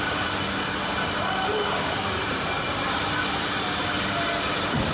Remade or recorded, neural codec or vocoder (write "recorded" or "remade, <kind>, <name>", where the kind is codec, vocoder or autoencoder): recorded